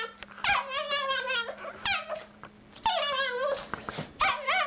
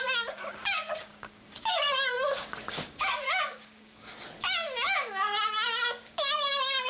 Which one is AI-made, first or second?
second